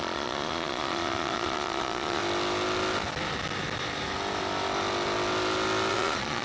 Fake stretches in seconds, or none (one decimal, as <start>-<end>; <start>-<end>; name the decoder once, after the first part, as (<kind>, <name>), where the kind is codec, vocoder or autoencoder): 0.0-2.2 (vocoder, Vocos); 5.9-6.4